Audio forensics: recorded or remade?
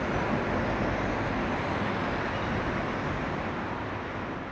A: recorded